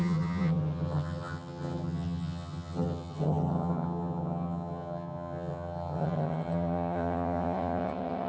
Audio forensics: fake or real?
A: fake